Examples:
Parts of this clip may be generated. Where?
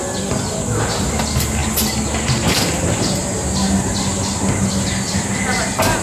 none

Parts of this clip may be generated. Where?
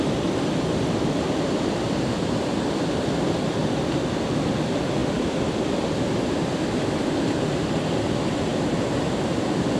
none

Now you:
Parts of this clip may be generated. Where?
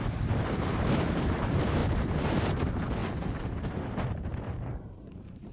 0.0-3.0 (vocoder, BigVGAN v2); 3.7-5.5